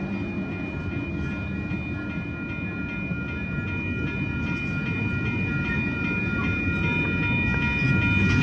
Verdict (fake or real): real